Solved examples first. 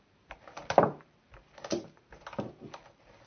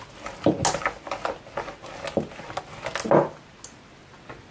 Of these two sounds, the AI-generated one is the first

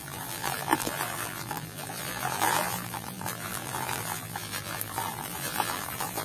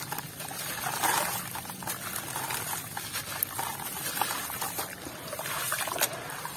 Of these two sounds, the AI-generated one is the first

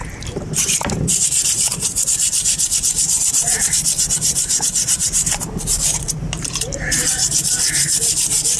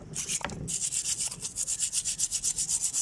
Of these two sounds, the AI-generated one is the first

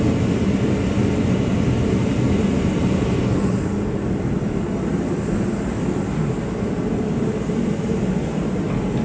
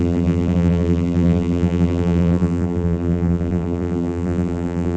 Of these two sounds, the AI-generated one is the second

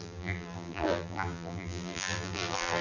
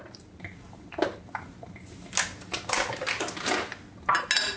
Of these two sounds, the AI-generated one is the first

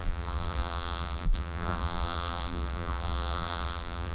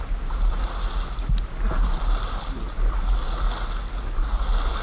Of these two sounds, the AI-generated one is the first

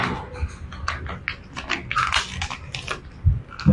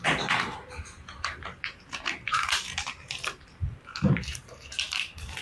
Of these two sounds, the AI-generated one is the second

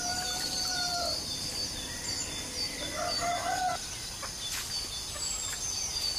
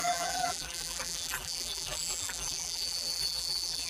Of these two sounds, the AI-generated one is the second